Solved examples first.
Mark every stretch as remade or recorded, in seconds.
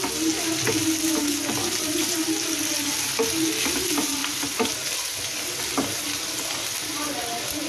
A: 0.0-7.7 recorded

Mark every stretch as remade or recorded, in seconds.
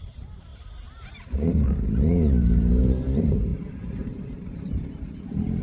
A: 0.0-5.6 remade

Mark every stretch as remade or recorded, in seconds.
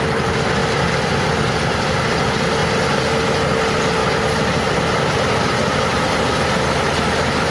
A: 0.0-0.6 recorded; 0.6-2.0 remade; 2.0-2.6 recorded; 2.6-3.5 remade; 3.5-4.0 recorded; 4.0-6.7 remade; 6.7-7.5 recorded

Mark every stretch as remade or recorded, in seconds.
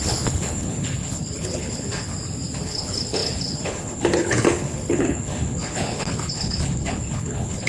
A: 0.0-2.1 remade; 2.1-2.6 recorded; 2.6-7.7 remade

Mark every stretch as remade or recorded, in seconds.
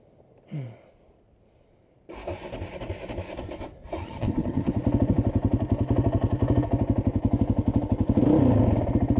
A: 0.0-4.0 recorded; 4.0-4.7 remade; 4.7-9.2 recorded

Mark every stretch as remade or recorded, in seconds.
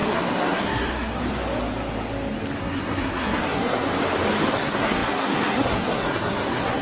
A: 0.0-1.2 remade; 1.2-2.6 recorded; 2.6-3.9 remade; 3.9-4.5 recorded; 4.5-6.8 remade